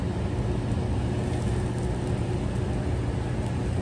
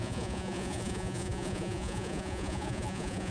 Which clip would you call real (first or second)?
first